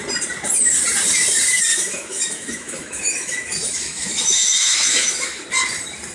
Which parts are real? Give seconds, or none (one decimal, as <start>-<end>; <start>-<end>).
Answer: 0.0-1.7; 5.4-6.1